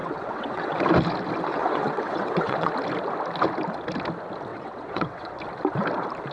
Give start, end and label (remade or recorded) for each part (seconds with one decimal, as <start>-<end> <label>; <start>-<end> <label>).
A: 0.0-0.8 remade; 0.8-1.5 recorded; 1.5-2.7 remade; 2.7-4.5 recorded; 4.5-5.4 remade; 5.4-6.3 recorded